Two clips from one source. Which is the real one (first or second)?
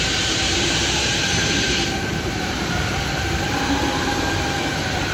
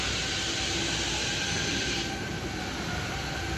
second